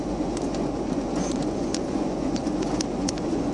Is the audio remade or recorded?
remade